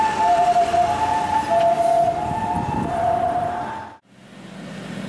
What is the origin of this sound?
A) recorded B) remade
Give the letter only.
A